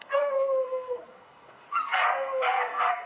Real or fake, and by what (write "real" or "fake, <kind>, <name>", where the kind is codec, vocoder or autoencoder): fake, codec, SNAC